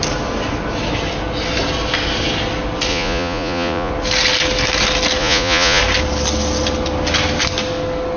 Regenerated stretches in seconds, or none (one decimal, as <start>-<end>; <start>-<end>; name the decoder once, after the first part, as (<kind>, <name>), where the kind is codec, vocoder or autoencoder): 2.9-3.9 (vocoder, Vocos); 5.2-5.8

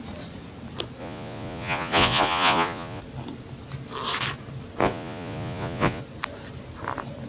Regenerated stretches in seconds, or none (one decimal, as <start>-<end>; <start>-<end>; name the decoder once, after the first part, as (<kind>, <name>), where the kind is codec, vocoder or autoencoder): 1.0-3.0 (vocoder, Vocos); 4.8-6.0

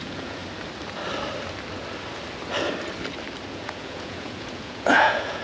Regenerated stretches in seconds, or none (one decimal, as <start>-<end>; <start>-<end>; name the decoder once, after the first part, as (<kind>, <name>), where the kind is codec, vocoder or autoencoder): 0.0-0.4 (vocoder, Vocos); 3.5-5.4

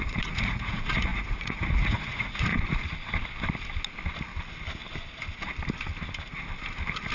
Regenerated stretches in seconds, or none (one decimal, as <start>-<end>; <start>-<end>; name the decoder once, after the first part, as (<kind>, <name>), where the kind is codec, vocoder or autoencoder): 0.0-2.5 (vocoder, Vocos)